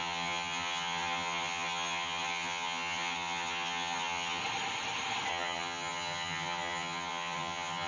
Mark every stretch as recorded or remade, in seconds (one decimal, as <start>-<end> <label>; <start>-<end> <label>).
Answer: 0.0-4.4 remade; 4.4-5.3 recorded; 5.3-7.9 remade